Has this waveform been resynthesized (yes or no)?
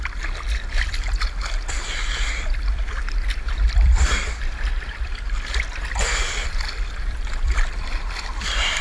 yes